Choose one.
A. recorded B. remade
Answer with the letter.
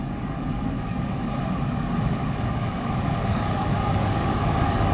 B